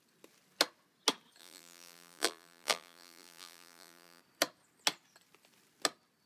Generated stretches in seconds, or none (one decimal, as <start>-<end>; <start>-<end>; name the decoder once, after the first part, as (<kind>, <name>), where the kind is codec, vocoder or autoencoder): 1.4-4.2 (vocoder, BigVGAN v2)